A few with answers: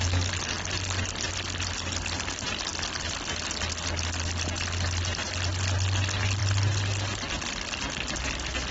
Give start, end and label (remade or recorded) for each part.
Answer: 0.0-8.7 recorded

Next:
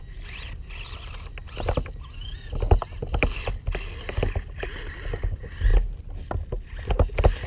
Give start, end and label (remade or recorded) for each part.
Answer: 0.0-7.5 recorded

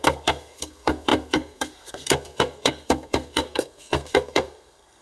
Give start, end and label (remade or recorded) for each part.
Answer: 0.0-5.0 remade